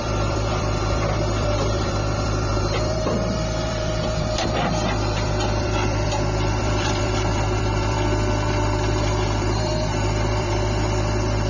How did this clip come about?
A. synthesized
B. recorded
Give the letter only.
A